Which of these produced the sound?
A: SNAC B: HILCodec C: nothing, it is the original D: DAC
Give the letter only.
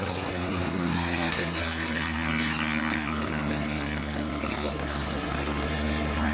A